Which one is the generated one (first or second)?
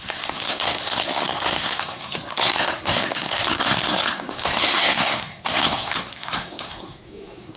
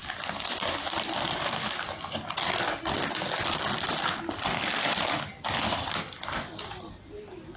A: first